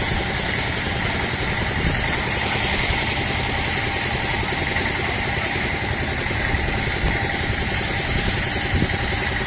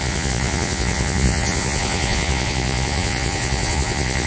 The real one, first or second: first